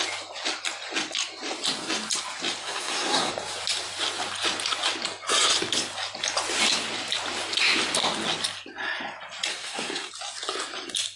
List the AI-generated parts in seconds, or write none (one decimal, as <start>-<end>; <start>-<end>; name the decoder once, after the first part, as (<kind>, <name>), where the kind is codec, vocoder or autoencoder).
2.6-3.3 (codec, SNAC); 9.5-10.1